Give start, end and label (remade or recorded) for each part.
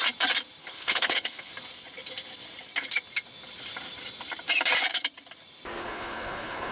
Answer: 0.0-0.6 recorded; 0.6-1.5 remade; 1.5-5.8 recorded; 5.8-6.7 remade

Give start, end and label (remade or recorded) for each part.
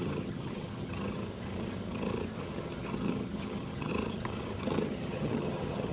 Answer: 0.0-1.2 remade; 1.2-2.4 recorded; 2.4-3.9 remade; 3.9-4.6 recorded; 4.6-5.9 remade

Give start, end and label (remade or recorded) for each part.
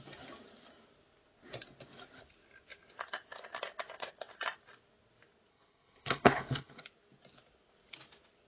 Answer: 0.0-5.5 recorded; 5.5-6.8 remade; 6.8-8.5 recorded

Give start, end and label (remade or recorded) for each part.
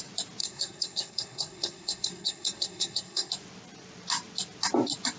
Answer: 0.0-0.4 recorded; 0.4-3.3 remade; 3.3-5.2 recorded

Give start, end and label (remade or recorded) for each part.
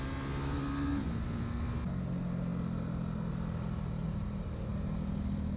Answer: 0.0-5.6 recorded